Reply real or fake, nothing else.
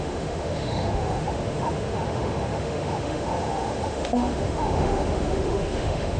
fake